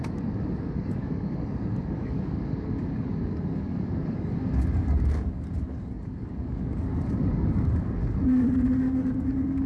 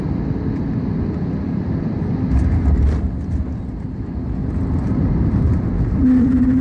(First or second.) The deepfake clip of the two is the first